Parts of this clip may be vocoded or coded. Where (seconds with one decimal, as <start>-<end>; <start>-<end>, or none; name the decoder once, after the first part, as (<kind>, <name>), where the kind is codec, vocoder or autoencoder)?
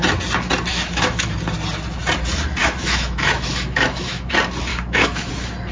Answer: 0.7-1.3 (autoencoder, DAC-VAE); 2.6-4.3; 4.7-5.3